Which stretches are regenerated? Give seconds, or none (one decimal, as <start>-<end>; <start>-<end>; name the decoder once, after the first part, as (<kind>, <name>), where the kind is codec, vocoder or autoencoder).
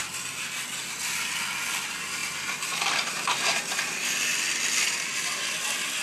none